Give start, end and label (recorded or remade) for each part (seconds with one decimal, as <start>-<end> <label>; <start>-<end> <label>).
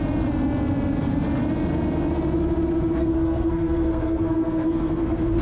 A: 0.0-3.0 recorded; 3.0-5.4 remade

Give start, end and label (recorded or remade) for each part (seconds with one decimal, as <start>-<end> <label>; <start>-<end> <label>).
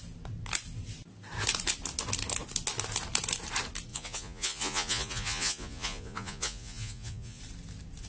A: 0.0-3.9 recorded; 3.9-7.4 remade; 7.4-8.1 recorded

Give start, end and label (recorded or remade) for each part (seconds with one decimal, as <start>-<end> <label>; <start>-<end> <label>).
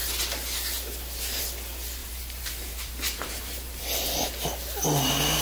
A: 0.0-2.0 recorded; 2.0-3.8 remade; 3.8-5.4 recorded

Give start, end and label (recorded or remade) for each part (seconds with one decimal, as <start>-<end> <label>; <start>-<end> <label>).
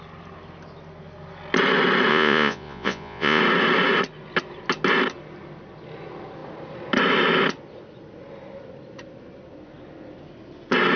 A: 0.0-2.1 recorded; 2.1-3.4 remade; 3.4-11.0 recorded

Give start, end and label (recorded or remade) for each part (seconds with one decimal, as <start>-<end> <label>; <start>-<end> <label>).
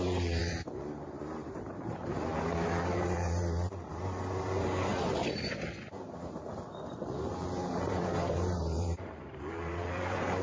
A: 0.0-4.9 remade; 4.9-7.3 recorded; 7.3-10.4 remade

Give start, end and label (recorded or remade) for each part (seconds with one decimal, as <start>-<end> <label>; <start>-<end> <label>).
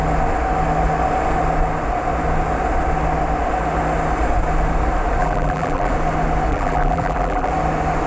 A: 0.0-5.2 recorded; 5.2-5.9 remade; 5.9-6.5 recorded; 6.5-7.5 remade; 7.5-8.1 recorded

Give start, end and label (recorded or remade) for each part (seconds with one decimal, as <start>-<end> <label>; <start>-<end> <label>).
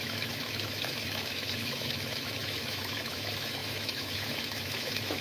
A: 0.0-5.2 remade